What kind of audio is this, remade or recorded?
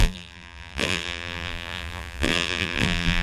remade